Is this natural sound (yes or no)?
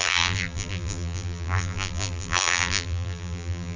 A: no